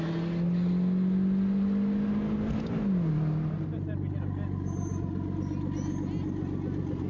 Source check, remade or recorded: recorded